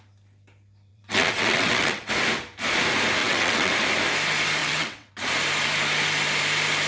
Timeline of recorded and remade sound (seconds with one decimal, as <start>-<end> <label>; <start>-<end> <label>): 0.0-0.9 recorded; 0.9-2.1 remade; 2.1-3.2 recorded; 3.2-3.7 remade; 3.7-4.6 recorded; 4.6-5.1 remade; 5.1-6.9 recorded